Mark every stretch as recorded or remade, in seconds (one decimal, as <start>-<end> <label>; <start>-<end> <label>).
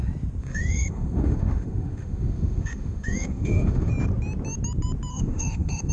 0.0-0.4 recorded; 0.4-3.9 remade; 3.9-5.1 recorded; 5.1-5.9 remade